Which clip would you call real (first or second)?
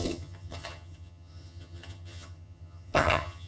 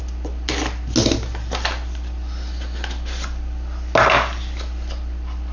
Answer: second